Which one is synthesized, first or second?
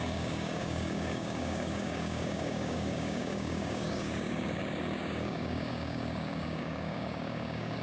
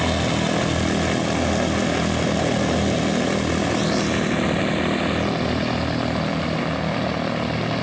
first